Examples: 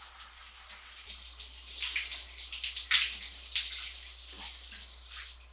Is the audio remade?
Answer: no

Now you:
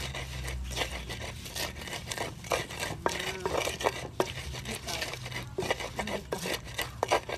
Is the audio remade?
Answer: no